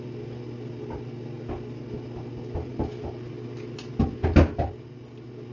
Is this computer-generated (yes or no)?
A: no